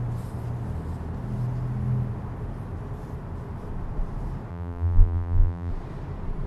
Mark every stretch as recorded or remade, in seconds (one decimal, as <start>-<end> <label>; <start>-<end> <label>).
0.0-4.5 recorded; 4.5-5.7 remade; 5.7-6.5 recorded